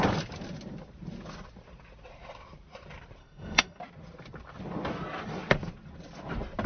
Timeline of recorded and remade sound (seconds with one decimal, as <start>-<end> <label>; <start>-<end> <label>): 0.0-3.2 recorded; 3.2-3.8 remade; 3.8-6.7 recorded